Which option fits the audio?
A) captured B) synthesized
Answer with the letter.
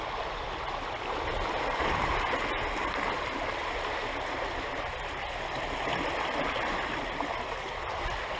A